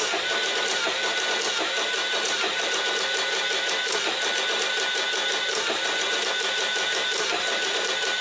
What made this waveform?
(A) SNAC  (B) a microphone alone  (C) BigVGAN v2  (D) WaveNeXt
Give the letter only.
B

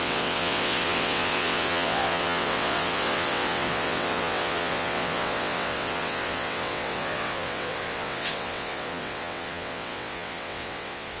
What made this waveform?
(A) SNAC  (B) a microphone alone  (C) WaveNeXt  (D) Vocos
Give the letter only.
C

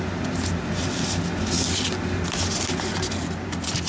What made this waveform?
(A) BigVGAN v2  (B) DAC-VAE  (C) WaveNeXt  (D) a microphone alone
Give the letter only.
D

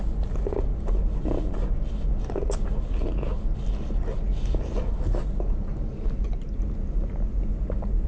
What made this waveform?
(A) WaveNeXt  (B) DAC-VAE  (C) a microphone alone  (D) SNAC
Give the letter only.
C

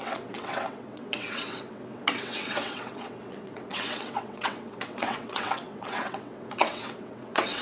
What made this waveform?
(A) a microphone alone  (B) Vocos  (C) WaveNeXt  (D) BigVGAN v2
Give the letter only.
C